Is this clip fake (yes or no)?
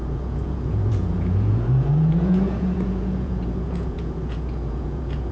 yes